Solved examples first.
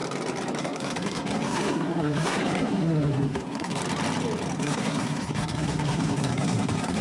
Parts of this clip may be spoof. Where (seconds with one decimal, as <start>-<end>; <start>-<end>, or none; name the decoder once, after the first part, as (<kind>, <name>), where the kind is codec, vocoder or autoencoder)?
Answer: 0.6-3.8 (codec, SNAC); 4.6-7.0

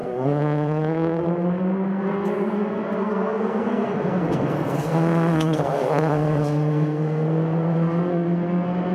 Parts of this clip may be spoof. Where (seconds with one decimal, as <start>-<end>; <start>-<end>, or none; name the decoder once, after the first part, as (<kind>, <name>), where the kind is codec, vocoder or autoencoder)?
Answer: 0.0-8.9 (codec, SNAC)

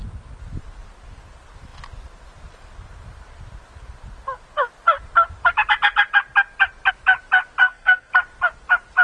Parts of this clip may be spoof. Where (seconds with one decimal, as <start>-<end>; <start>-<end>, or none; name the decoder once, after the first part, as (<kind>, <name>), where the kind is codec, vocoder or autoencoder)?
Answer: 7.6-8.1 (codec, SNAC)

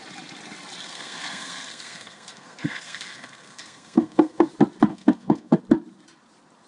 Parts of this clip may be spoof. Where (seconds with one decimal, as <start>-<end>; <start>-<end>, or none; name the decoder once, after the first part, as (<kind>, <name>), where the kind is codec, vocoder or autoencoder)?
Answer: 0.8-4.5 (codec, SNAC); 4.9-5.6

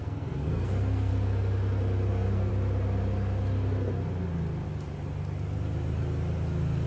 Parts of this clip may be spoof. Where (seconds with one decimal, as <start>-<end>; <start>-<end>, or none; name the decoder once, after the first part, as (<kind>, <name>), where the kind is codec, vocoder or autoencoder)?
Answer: 0.0-1.1 (codec, SNAC); 2.1-2.5